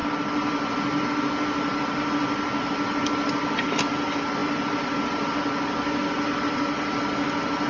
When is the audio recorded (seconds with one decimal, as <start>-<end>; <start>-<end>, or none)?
0.0-7.7